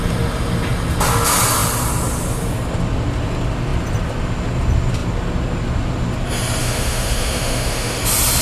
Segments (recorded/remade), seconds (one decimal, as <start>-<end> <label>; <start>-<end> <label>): 0.0-6.6 recorded; 6.6-8.0 remade; 8.0-8.4 recorded